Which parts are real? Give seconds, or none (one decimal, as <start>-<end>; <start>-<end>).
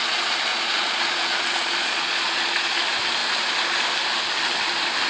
0.0-0.5; 2.7-5.1